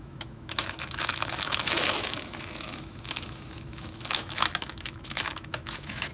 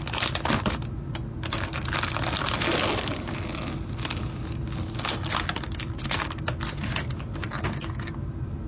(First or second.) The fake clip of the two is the first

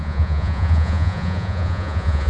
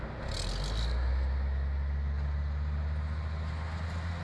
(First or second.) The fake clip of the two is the first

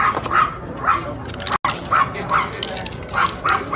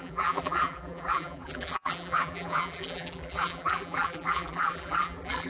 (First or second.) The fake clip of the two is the second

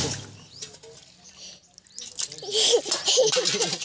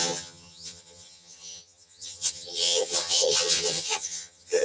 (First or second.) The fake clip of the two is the second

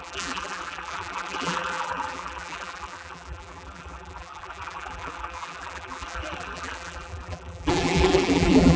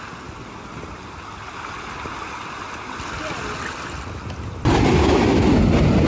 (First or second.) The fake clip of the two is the first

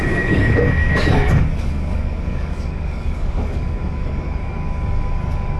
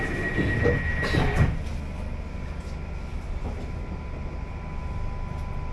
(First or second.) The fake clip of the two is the first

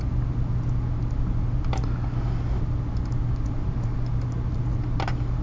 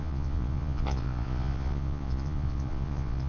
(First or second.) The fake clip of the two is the second